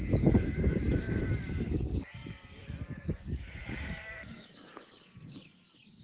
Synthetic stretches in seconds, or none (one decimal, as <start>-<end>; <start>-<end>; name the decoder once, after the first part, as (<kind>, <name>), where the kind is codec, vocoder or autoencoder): 0.0-6.0 (codec, DAC)